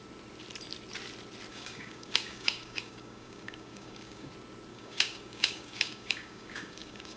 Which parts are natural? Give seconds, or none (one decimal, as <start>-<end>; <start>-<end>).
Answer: 0.0-1.5; 4.3-4.7